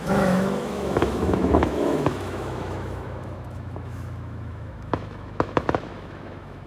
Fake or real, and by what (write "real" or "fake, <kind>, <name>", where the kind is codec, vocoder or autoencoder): fake, autoencoder, DAC-VAE